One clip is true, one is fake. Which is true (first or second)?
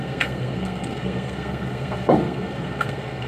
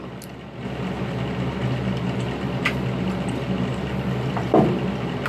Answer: second